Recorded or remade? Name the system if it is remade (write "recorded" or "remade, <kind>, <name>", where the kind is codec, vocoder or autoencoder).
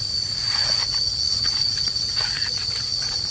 remade, vocoder, Vocos